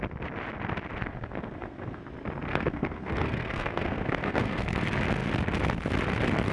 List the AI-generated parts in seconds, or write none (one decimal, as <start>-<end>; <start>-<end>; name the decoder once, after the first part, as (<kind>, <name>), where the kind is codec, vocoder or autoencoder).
1.0-2.0 (codec, SNAC); 2.5-4.7